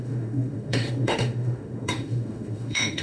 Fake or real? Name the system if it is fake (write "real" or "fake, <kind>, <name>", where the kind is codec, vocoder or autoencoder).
fake, autoencoder, DAC-VAE